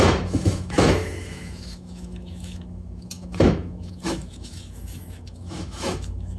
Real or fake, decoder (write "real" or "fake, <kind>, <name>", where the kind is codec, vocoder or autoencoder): fake, autoencoder, DAC-VAE